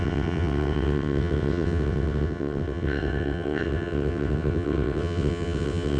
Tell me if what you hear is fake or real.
fake